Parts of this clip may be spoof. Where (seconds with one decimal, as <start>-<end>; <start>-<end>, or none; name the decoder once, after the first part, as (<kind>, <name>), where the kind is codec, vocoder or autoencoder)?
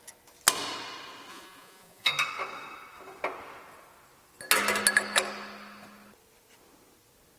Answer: 1.3-2.1 (vocoder, Vocos)